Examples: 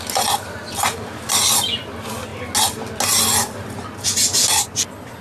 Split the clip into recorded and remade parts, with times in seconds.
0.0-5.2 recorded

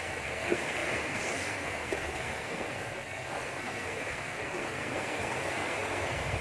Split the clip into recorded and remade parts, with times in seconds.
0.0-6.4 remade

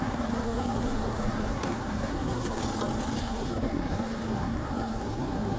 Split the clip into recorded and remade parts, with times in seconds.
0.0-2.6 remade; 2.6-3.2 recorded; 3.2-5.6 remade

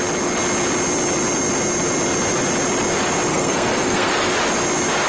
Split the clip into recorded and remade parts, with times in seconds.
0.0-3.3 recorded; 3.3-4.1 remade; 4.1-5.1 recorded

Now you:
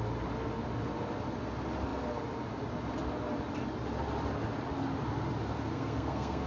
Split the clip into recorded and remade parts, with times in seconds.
0.0-5.7 recorded; 5.7-6.5 remade

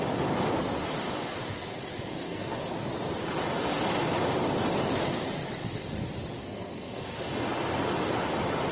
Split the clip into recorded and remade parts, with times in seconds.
0.0-2.1 recorded; 2.1-2.7 remade; 2.7-6.4 recorded; 6.4-7.2 remade; 7.2-8.7 recorded

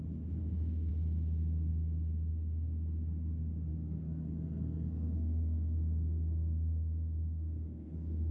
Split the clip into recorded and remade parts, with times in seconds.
0.0-0.4 recorded; 0.4-0.9 remade; 0.9-3.7 recorded; 3.7-8.3 remade